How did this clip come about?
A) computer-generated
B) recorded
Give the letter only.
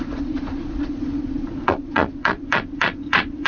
A